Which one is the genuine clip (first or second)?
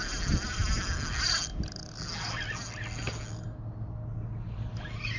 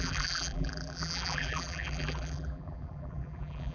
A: first